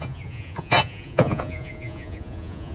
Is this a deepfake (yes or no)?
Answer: yes